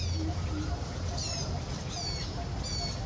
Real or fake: real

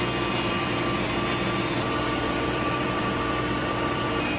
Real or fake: fake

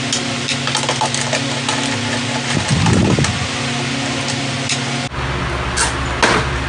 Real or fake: real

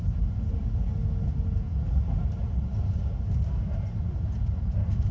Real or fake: real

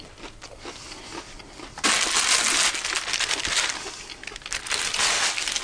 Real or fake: real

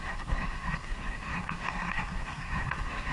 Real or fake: fake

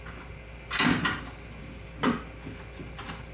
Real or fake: real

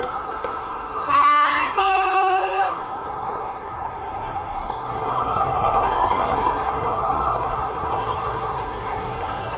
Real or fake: fake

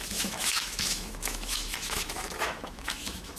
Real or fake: fake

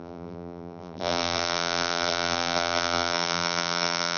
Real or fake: fake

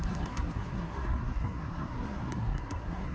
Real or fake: fake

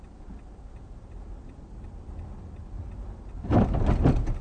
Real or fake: fake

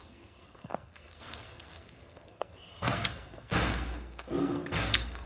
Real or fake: fake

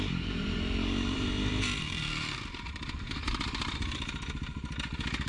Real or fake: fake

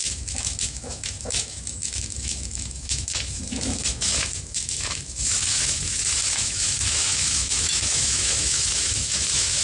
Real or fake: fake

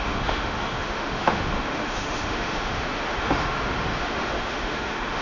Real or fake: fake